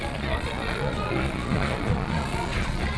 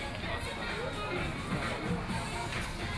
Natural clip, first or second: second